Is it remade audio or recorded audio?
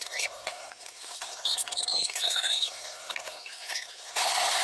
remade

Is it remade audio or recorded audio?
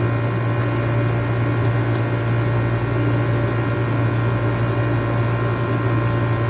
recorded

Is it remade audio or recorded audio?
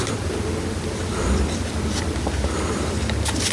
recorded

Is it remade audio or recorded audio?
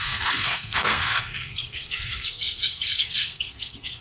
remade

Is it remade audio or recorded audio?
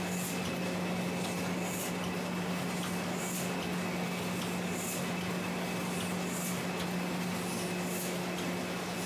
recorded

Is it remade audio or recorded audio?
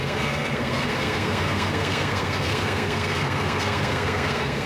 remade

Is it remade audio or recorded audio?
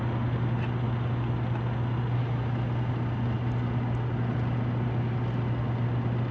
recorded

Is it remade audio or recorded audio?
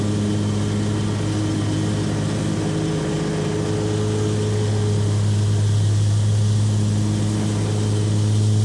recorded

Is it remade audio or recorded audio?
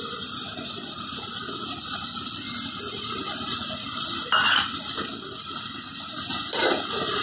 recorded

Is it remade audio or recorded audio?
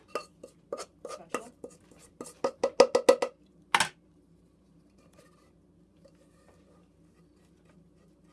recorded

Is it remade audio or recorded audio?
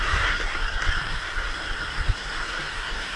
remade